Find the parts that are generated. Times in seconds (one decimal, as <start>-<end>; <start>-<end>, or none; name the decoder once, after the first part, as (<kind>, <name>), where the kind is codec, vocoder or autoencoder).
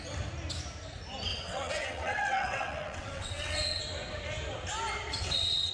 1.3-3.8 (vocoder, WaveNeXt); 5.1-5.7